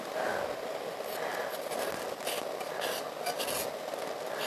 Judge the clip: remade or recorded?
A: recorded